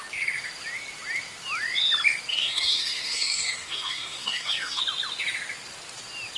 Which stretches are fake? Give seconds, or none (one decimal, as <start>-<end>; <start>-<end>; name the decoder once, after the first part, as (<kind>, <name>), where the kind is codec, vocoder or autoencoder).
2.3-4.8 (codec, SNAC)